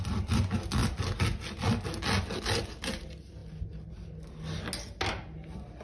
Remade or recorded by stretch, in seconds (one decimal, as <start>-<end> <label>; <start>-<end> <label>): 0.0-5.8 recorded